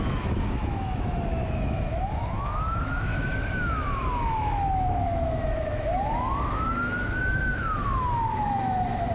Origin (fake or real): fake